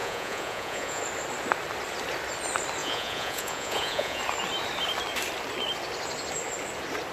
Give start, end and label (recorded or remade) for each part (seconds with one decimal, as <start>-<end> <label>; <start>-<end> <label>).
0.0-1.0 remade; 1.0-2.8 recorded; 2.8-4.2 remade; 4.2-7.1 recorded